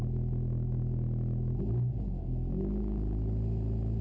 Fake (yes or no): no